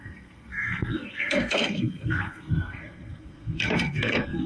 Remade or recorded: remade